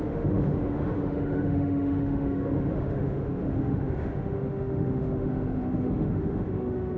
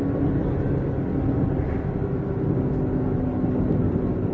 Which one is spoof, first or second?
first